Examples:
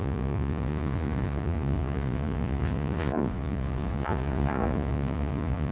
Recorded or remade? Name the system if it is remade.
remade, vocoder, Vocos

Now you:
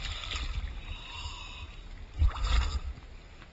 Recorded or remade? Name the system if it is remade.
recorded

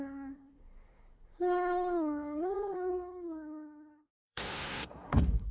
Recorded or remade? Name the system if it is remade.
remade, codec, SNAC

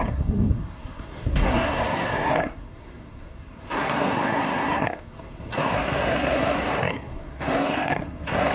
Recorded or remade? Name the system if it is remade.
remade, codec, SNAC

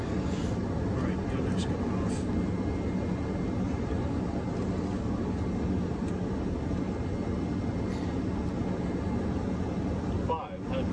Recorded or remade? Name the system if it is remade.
recorded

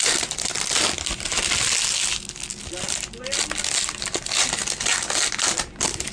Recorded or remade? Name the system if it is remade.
recorded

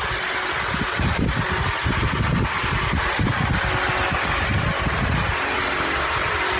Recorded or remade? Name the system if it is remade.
recorded